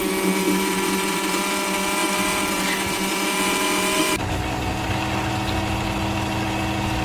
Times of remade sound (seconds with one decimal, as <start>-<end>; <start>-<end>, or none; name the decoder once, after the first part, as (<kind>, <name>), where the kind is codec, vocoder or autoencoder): none